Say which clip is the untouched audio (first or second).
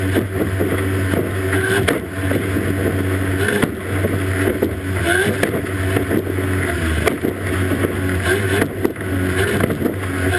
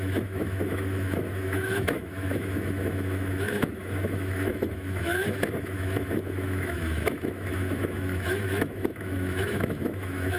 first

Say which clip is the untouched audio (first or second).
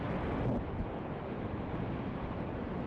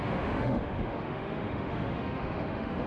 first